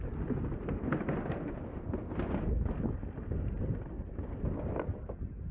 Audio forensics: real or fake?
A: real